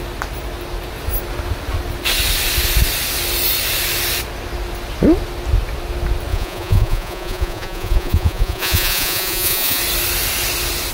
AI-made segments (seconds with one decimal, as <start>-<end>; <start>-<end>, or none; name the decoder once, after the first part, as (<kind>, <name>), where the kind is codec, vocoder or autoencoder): 6.3-9.8 (vocoder, Vocos)